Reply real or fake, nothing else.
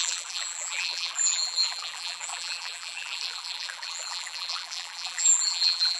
fake